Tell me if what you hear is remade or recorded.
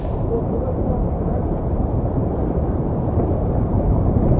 remade